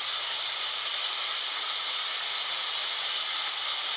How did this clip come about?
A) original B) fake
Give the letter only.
A